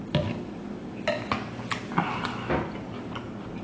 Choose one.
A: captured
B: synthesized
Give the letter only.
A